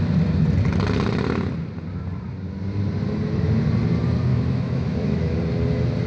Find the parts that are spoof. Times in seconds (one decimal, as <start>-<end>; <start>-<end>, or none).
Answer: 4.3-5.3